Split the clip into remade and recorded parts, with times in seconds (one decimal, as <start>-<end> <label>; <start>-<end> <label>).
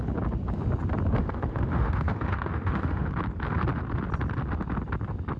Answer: 0.0-1.2 recorded; 1.2-3.1 remade; 3.1-5.4 recorded